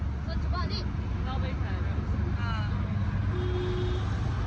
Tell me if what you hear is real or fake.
real